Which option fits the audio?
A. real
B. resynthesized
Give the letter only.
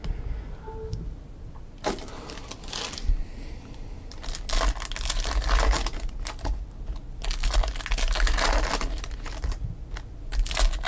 A